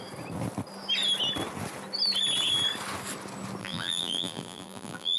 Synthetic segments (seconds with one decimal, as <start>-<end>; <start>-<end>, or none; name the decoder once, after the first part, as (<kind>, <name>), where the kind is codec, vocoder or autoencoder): 3.6-5.2 (vocoder, BigVGAN v2)